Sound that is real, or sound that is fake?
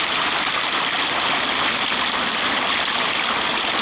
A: real